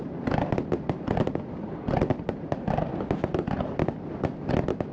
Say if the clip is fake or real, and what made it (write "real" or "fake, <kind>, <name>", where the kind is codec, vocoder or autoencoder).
real